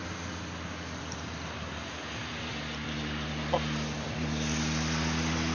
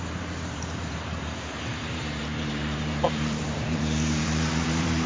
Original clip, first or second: first